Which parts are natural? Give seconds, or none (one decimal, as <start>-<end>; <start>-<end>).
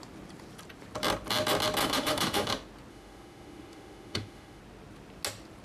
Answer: 0.0-1.8; 2.5-2.9; 4.6-5.6